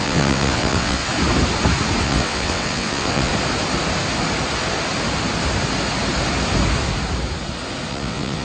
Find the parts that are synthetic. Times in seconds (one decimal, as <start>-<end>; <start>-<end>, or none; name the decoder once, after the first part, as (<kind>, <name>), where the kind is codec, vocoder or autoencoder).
0.0-1.0 (vocoder, WaveNeXt); 2.0-3.3; 7.9-8.4